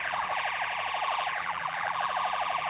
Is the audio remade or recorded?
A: remade